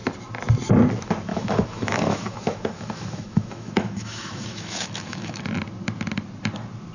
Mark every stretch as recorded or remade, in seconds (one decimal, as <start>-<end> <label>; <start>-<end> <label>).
0.0-1.3 recorded; 1.3-5.4 remade; 5.4-6.9 recorded